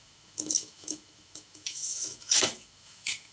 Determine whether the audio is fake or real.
fake